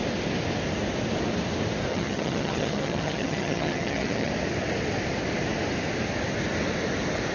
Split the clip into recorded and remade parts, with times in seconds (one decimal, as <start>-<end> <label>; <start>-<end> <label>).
0.0-1.9 recorded; 1.9-4.3 remade; 4.3-7.3 recorded